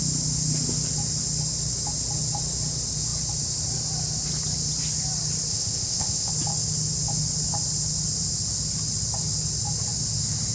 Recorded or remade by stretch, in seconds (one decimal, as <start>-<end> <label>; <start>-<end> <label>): 0.0-5.5 recorded; 5.5-6.3 remade; 6.3-10.5 recorded